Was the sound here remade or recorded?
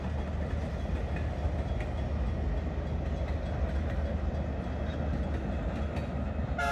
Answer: recorded